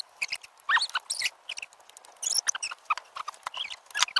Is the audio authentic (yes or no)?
yes